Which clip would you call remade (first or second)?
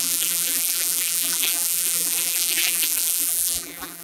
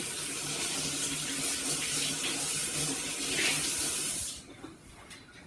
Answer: first